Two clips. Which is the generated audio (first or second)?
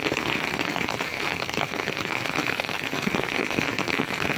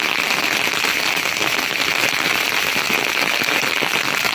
first